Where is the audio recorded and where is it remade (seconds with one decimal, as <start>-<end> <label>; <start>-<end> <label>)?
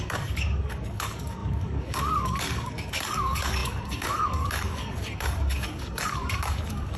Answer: 0.0-7.0 remade